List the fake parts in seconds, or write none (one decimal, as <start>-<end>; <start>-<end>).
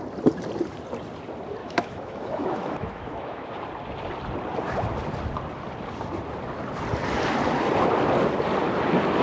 1.6-3.5